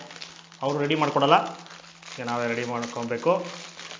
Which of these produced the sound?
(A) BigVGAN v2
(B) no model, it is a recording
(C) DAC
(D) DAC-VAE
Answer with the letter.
B